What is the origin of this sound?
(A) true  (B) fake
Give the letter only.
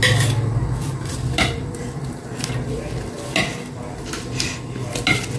A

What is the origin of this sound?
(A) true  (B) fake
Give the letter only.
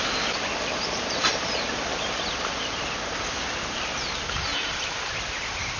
A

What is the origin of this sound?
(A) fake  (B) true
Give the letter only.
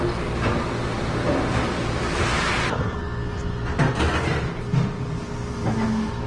B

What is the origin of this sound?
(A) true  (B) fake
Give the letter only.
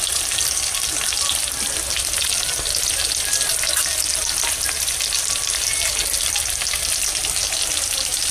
A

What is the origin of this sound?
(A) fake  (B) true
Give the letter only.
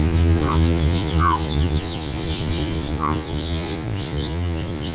A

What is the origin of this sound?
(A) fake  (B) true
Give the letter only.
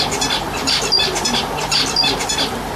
B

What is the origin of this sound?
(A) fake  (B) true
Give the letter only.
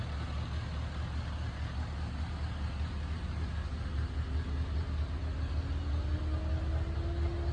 B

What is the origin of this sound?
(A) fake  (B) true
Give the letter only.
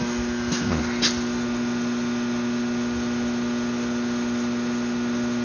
B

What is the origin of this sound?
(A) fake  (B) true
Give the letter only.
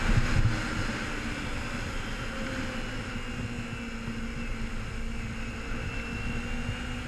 B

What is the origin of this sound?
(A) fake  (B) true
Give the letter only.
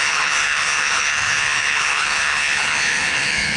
A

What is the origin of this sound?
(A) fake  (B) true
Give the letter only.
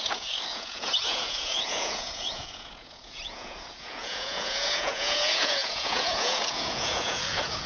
A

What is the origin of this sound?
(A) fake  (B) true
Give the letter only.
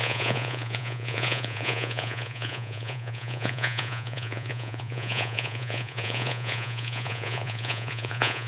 A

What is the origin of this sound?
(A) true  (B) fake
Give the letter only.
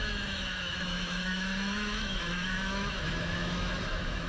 B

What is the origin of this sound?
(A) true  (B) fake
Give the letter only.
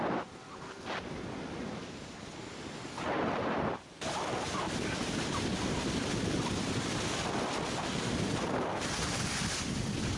B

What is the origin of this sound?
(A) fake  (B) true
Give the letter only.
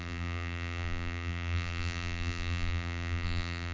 A